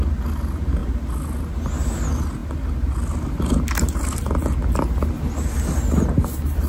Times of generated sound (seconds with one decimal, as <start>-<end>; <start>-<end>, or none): none